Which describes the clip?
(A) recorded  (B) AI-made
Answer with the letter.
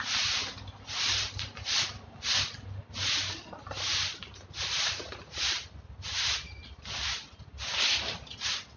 A